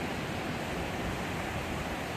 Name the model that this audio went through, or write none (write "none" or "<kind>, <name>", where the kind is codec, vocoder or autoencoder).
none